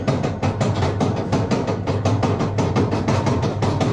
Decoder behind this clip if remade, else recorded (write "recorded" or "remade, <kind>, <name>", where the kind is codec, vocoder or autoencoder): recorded